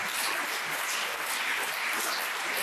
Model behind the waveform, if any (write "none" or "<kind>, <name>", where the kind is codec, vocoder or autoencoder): vocoder, BigVGAN v2